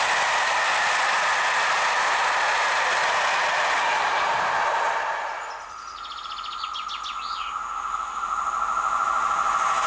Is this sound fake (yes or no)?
no